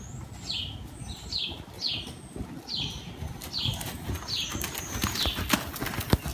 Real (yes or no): yes